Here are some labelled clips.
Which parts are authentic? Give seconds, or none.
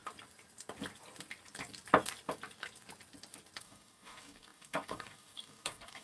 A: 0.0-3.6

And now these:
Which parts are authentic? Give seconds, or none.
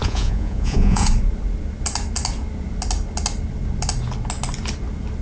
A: 1.1-5.2